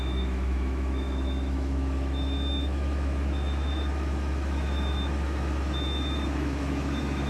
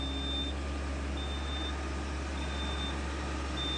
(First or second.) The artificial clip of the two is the first